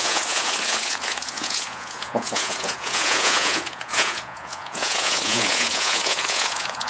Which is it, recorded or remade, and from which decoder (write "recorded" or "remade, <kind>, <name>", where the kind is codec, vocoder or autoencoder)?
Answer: remade, vocoder, Vocos